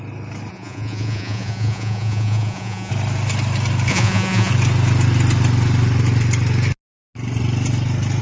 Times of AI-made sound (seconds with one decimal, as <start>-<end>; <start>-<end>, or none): 0.5-2.9; 3.9-4.5